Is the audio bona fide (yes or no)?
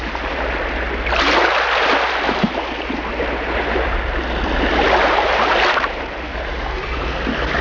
yes